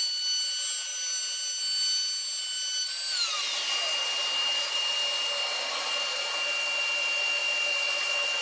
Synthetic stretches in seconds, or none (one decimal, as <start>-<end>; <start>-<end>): none

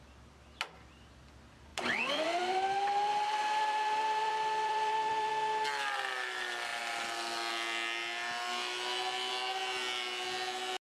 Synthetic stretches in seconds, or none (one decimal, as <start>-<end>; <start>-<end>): 1.7-5.3

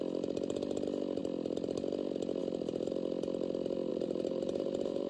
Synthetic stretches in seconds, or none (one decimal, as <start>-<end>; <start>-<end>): 3.9-5.1